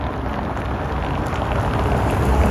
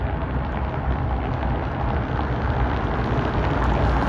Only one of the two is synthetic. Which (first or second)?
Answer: first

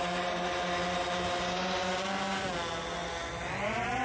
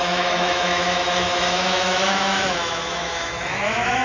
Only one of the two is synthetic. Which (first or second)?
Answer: second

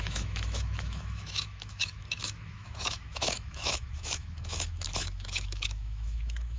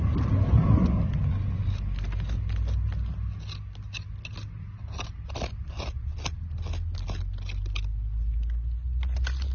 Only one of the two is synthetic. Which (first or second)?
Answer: first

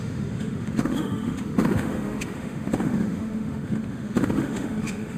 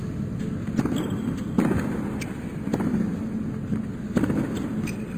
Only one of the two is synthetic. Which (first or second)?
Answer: first